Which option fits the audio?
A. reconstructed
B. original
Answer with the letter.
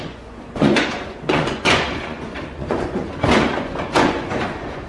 A